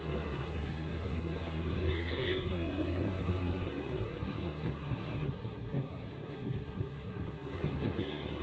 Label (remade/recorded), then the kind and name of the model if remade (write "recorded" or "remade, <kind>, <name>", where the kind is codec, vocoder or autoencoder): remade, codec, SNAC